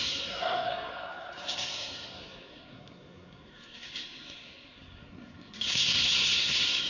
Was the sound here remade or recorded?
remade